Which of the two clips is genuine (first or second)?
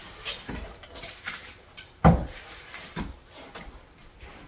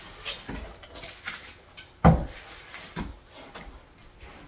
second